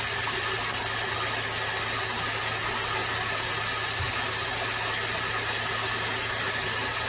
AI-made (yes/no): no